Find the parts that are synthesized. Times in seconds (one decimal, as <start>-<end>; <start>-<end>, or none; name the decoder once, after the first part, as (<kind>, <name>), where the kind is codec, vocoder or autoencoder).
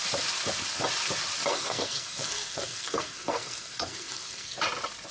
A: 1.5-4.6 (codec, SNAC)